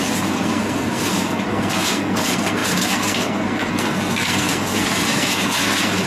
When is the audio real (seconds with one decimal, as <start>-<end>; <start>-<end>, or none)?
none